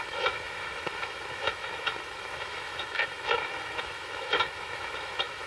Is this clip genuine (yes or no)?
no